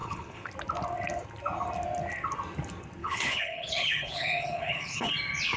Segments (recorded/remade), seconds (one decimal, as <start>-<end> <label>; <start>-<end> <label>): 0.0-0.5 remade; 0.5-3.0 recorded; 3.0-5.1 remade; 5.1-5.6 recorded